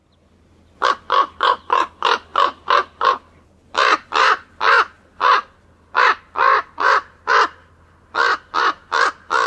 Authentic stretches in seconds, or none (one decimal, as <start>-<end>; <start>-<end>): 0.0-9.5